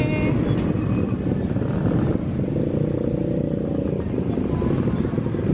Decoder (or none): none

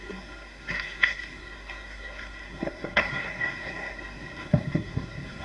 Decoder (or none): codec, SNAC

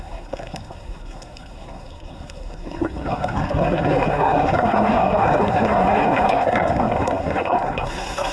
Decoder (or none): codec, SNAC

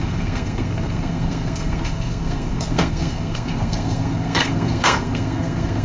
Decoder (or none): codec, SNAC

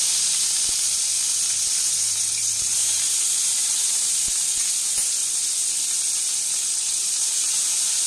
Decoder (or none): none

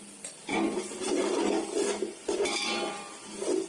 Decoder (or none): none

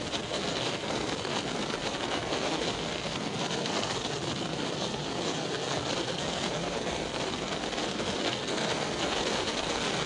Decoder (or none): codec, SNAC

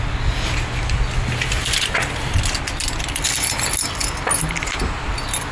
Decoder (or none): none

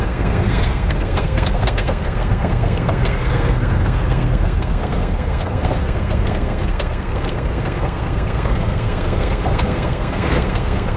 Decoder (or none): codec, SNAC